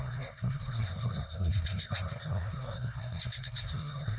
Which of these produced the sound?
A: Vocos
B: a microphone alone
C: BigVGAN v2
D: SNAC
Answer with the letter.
D